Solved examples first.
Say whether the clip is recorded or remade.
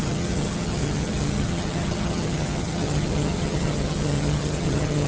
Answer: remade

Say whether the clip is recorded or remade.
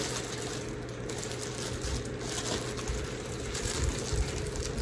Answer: recorded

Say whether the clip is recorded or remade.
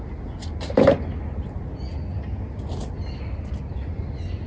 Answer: recorded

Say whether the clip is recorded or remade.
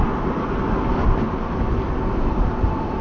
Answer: recorded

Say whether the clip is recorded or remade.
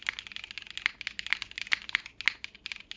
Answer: recorded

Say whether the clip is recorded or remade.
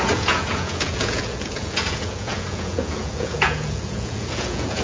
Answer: remade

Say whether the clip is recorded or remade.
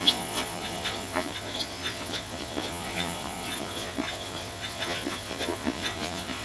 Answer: remade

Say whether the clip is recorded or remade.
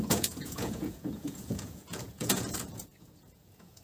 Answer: remade